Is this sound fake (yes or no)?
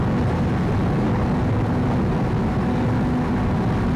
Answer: no